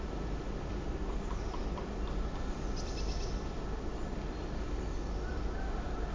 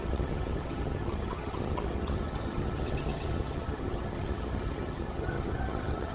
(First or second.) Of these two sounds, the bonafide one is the first